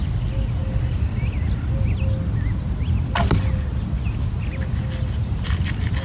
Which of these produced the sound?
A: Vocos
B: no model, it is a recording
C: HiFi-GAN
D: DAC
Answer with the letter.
B